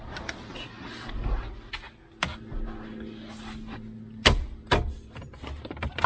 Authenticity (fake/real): real